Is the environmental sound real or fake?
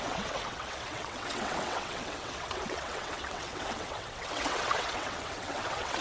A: fake